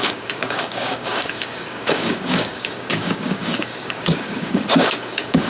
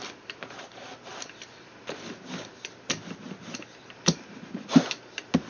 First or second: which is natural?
second